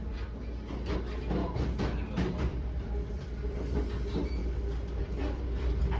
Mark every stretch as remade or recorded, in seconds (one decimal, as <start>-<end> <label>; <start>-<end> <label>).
0.0-1.4 recorded; 1.4-2.0 remade; 2.0-2.5 recorded; 2.5-3.8 remade; 3.8-6.0 recorded

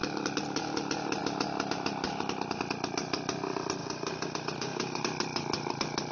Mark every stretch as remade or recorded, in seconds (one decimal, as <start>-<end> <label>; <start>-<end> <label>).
0.0-3.8 recorded; 3.8-5.0 remade; 5.0-6.1 recorded

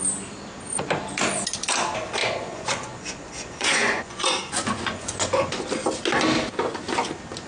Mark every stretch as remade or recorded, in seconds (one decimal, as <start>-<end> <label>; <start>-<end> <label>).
0.0-2.2 recorded; 2.2-5.6 remade; 5.6-7.5 recorded

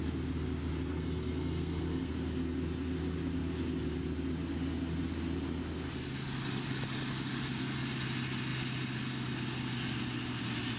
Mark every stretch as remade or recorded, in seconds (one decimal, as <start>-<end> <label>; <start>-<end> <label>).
0.0-0.9 recorded; 0.9-2.1 remade; 2.1-10.8 recorded

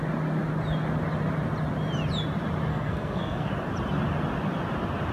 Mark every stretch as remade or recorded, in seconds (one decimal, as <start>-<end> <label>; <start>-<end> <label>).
0.0-2.7 recorded; 2.7-3.5 remade; 3.5-5.1 recorded

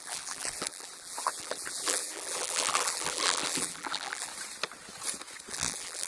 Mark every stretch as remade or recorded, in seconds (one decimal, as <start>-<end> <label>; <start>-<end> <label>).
0.0-4.3 remade; 4.3-5.5 recorded; 5.5-6.1 remade

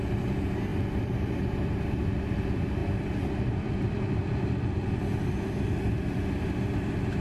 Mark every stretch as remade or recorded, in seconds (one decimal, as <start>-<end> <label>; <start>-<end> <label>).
0.0-7.2 remade

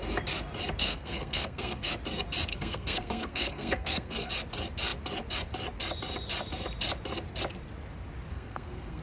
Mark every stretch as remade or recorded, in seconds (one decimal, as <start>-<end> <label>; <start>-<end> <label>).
0.0-0.8 recorded; 0.8-1.9 remade; 1.9-2.5 recorded; 2.5-4.3 remade; 4.3-8.3 recorded; 8.3-9.0 remade